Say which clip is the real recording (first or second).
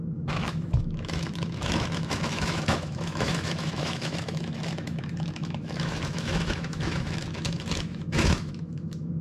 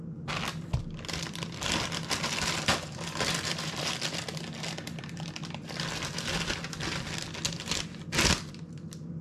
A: second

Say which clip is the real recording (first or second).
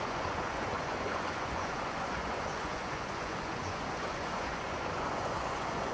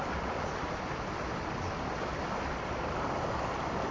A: second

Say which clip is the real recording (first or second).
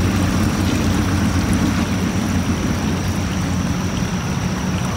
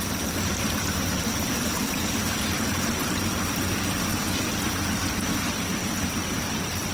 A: first